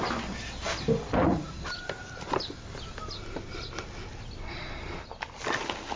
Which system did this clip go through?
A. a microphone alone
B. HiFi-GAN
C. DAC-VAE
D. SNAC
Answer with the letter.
A